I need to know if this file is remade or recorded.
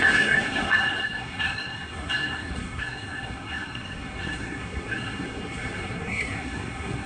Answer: remade